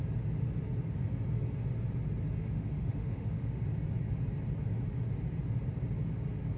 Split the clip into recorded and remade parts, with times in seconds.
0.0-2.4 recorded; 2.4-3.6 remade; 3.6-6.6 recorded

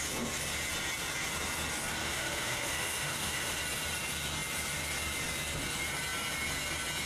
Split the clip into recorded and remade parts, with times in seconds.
0.0-2.0 recorded; 2.0-3.6 remade; 3.6-7.1 recorded

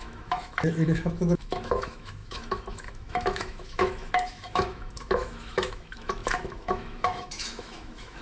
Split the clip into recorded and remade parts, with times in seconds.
0.0-8.2 remade

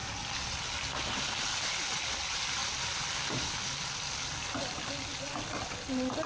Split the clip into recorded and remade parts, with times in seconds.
0.0-6.3 recorded

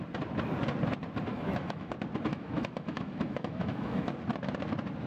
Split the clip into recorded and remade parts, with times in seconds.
0.0-1.3 recorded; 1.3-1.9 remade; 1.9-2.3 recorded; 2.3-4.1 remade; 4.1-5.1 recorded